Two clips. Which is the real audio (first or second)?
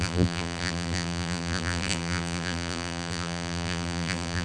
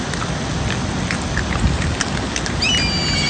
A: second